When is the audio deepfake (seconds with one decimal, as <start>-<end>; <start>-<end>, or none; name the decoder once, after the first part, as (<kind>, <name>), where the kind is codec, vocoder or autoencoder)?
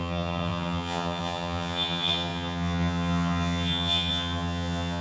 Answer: 0.0-5.0 (vocoder, HiFi-GAN)